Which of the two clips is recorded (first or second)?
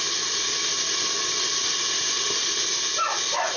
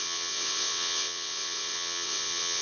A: first